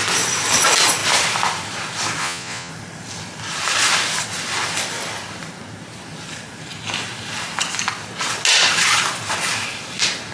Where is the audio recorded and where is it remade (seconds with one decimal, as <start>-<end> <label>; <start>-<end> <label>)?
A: 0.0-2.2 recorded; 2.2-2.7 remade; 2.7-10.3 recorded